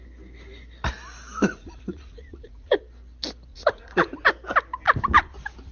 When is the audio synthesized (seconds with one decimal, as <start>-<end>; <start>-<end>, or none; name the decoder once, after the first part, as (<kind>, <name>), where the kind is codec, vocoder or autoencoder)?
1.4-2.8 (vocoder, Vocos); 3.5-4.3